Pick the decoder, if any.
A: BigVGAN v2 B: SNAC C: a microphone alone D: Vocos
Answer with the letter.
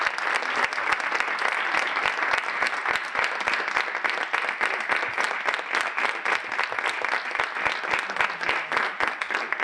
C